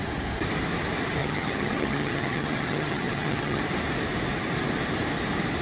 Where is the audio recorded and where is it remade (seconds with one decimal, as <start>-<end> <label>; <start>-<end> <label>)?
0.0-1.2 recorded; 1.2-3.6 remade; 3.6-5.6 recorded